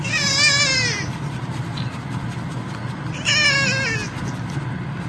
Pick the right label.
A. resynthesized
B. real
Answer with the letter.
B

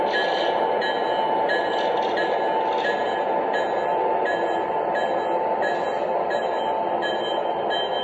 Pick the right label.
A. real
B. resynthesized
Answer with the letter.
A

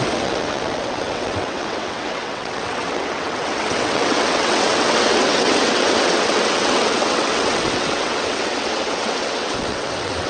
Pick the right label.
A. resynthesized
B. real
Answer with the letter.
A